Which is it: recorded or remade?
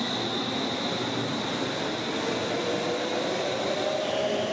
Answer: recorded